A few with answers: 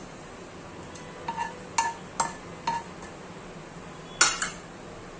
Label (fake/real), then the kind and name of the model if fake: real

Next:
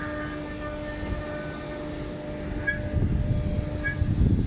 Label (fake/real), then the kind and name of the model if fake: real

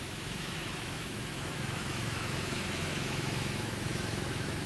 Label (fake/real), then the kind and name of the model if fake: fake, autoencoder, DAC-VAE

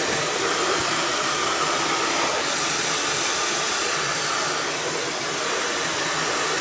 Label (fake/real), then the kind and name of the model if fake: real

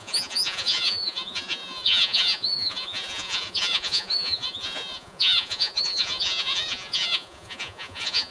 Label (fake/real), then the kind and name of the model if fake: fake, vocoder, Vocos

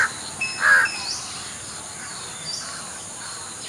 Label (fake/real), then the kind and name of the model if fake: real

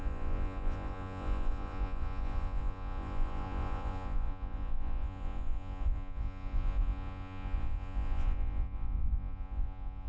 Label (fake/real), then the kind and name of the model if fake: fake, vocoder, Vocos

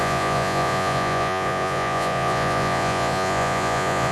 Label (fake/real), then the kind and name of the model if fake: fake, vocoder, Vocos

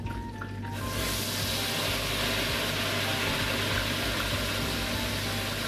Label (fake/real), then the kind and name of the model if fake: real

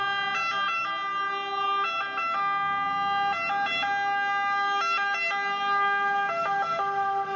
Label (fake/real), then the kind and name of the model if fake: real